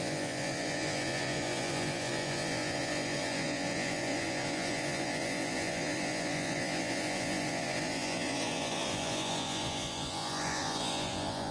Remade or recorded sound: remade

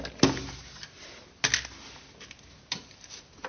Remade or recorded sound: recorded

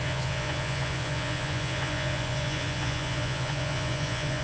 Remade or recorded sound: remade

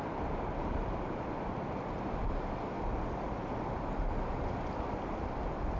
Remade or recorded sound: recorded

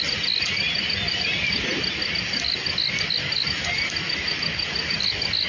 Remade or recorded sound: recorded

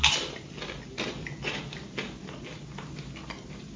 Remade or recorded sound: recorded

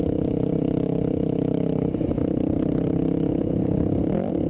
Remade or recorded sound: recorded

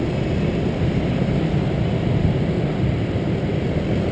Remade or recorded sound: recorded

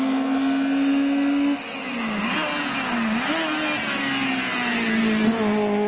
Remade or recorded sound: recorded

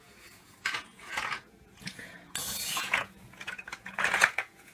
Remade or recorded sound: remade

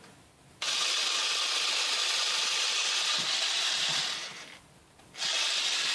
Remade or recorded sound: recorded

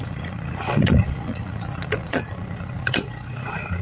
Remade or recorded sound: remade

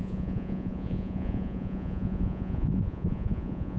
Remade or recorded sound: remade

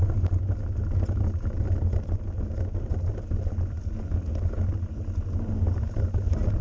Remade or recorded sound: recorded